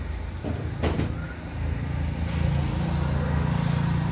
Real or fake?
real